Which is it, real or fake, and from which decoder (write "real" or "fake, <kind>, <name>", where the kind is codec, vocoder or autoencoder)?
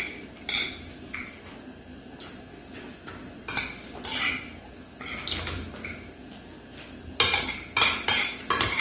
real